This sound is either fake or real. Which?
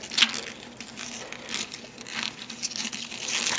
real